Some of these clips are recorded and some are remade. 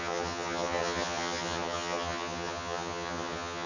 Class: remade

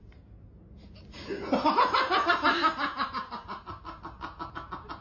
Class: recorded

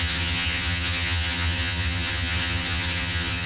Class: remade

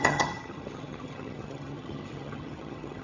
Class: remade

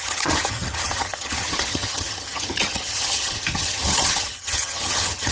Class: remade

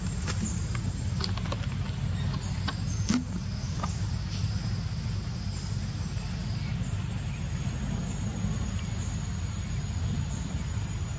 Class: recorded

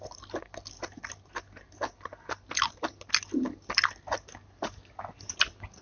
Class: recorded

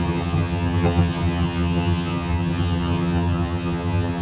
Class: remade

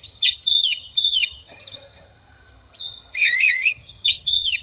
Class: remade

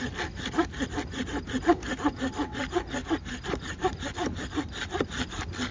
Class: recorded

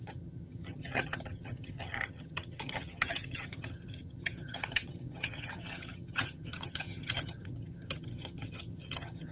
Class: remade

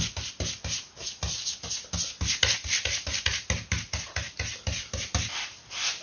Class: recorded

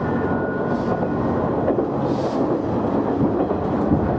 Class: recorded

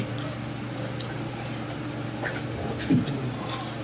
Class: recorded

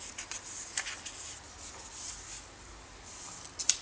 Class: recorded